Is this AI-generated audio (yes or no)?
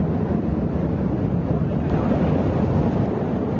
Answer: no